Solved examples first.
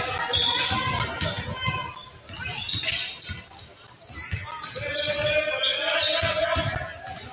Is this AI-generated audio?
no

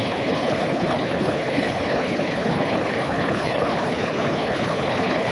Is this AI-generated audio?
yes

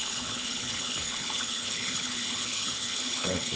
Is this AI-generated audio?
yes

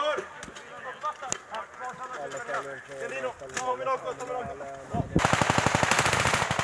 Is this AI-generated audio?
no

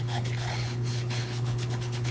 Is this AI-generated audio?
yes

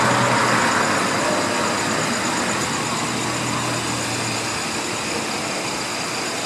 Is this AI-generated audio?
no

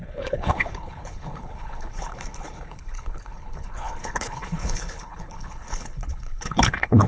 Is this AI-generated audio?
yes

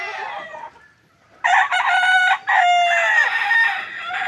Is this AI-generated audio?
no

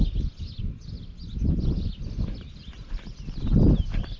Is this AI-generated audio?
no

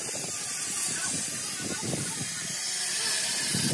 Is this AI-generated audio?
no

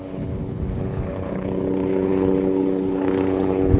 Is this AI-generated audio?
yes